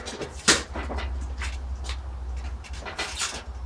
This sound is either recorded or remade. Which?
recorded